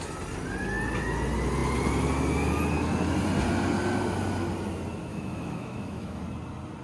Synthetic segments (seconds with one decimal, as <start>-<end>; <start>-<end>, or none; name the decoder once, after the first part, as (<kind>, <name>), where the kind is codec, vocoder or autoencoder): 5.1-6.2 (autoencoder, DAC-VAE)